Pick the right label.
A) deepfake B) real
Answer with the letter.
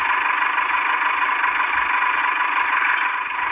B